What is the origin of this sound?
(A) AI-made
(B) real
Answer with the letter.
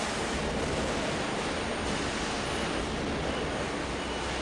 B